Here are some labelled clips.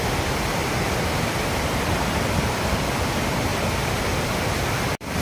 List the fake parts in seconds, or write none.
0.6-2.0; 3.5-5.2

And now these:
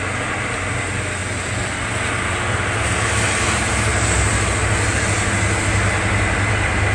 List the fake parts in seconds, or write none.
1.2-1.8

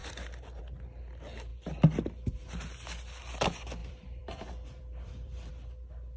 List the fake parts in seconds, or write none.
0.0-0.6; 3.8-5.5

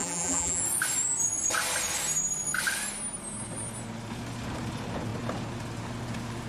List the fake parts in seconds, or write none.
0.0-0.6

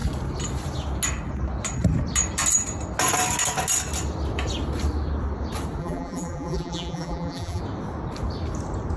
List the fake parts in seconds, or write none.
5.8-7.6

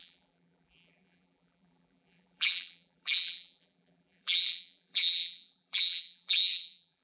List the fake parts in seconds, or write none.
0.0-7.0

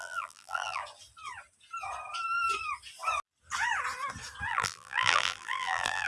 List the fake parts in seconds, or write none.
0.0-0.8; 4.5-6.1

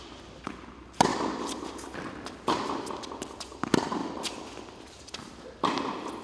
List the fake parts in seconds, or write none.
1.1-3.3; 4.0-6.2